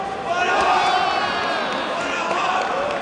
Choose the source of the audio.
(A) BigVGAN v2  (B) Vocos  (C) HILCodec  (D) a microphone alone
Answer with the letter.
D